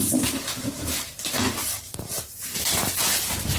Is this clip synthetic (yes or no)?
yes